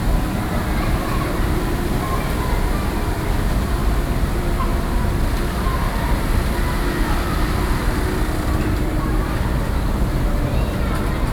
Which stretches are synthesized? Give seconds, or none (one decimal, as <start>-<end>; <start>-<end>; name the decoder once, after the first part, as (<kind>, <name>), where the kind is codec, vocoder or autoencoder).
none